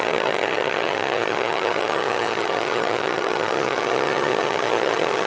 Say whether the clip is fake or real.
fake